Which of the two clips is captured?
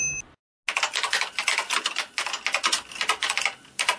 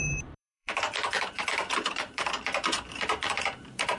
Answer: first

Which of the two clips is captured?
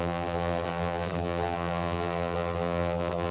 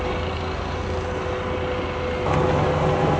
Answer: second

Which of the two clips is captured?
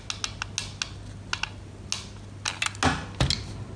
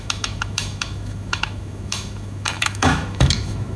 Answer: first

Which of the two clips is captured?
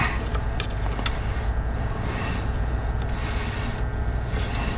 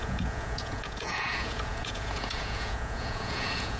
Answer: first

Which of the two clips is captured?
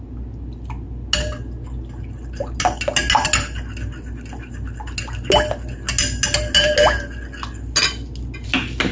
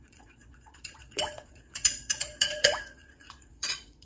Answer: first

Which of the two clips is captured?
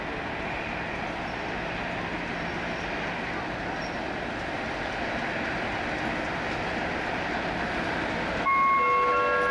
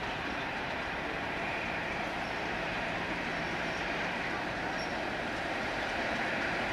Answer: first